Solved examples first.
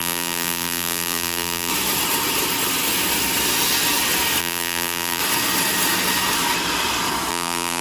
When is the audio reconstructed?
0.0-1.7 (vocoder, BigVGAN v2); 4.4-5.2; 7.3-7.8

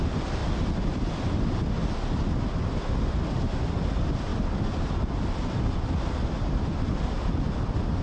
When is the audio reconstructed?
0.4-1.2 (vocoder, BigVGAN v2); 4.3-7.3